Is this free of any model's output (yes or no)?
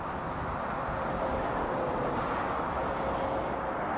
yes